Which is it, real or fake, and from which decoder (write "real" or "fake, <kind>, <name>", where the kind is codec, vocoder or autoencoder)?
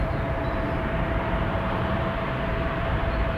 fake, vocoder, BigVGAN v2